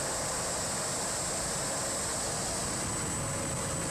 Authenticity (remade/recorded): recorded